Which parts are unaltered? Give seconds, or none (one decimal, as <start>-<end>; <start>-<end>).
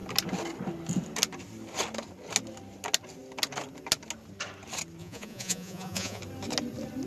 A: 0.0-5.0; 6.2-7.1